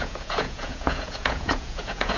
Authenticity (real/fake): fake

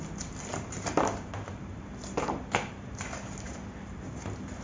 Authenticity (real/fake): real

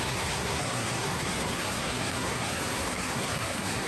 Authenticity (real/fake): fake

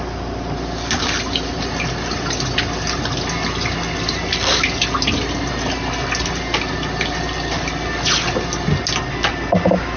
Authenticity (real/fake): real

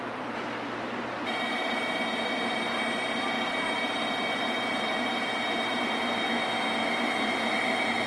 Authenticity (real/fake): real